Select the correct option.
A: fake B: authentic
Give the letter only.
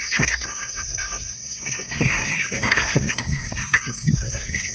A